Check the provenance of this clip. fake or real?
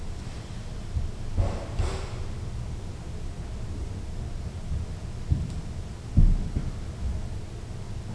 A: real